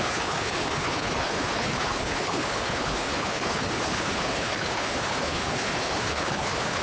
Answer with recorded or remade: remade